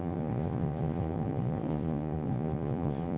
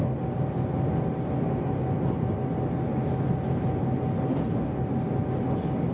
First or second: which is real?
second